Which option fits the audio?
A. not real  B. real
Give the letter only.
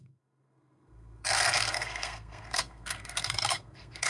A